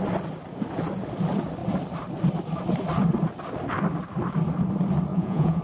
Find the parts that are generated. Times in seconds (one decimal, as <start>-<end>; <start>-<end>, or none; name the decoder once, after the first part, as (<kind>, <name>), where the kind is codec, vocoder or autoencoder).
5.1-5.6 (vocoder, Vocos)